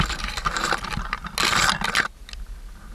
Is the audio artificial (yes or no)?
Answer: no